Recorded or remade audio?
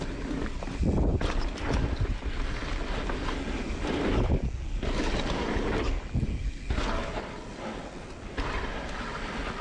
recorded